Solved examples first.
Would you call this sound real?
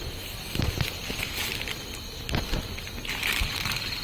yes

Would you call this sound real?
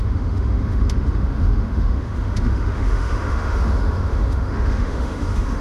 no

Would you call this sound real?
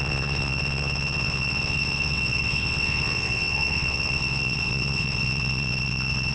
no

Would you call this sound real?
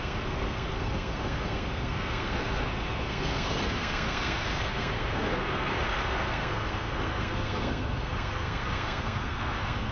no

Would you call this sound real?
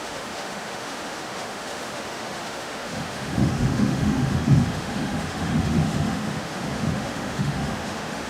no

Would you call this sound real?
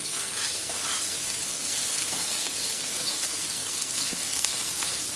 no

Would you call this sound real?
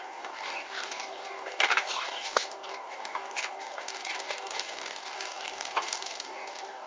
no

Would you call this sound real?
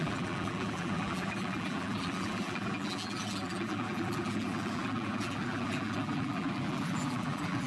no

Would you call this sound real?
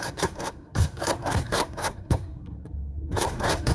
no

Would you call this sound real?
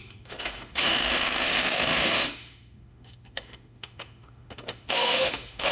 no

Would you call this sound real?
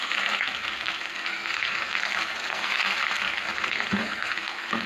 no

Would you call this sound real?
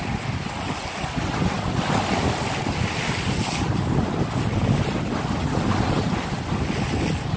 yes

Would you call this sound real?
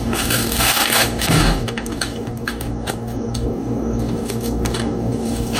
no